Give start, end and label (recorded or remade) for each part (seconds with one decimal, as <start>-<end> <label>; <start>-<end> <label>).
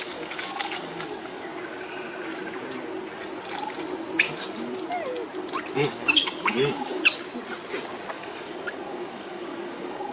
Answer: 0.0-1.5 remade; 1.5-5.9 recorded; 5.9-7.0 remade; 7.0-8.1 recorded; 8.1-10.1 remade